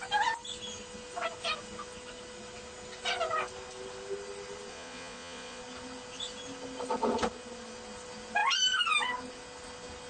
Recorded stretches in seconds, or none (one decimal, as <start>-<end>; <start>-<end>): 0.0-4.7; 5.6-10.1